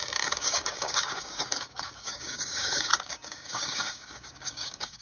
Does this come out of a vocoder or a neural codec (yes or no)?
yes